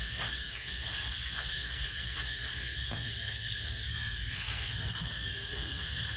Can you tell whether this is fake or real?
fake